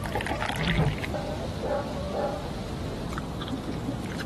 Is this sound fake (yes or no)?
no